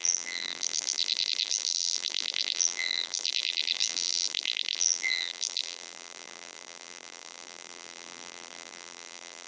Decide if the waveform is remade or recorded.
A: remade